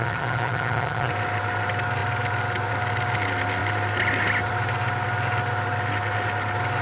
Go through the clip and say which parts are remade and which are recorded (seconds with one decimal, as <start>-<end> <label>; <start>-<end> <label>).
0.0-1.1 remade; 1.1-6.8 recorded